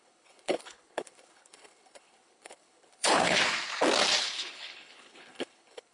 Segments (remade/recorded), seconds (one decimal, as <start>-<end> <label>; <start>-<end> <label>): 0.0-3.4 remade; 3.4-4.2 recorded; 4.2-5.9 remade